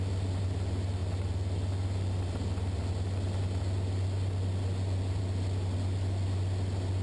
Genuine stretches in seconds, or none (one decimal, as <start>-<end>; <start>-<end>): 0.0-7.0